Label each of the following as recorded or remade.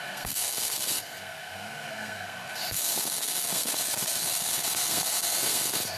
remade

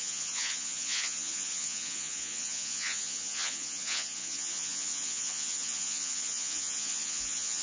remade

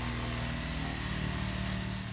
recorded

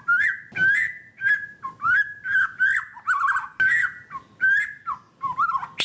recorded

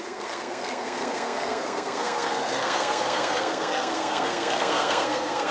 remade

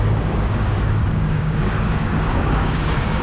remade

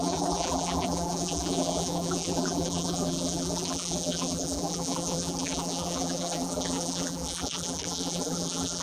remade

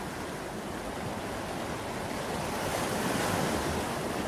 recorded